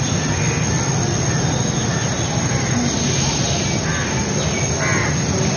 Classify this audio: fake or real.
real